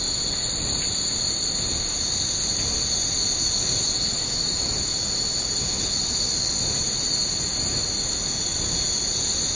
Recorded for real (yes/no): yes